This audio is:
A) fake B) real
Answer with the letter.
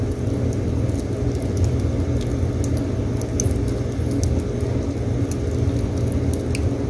B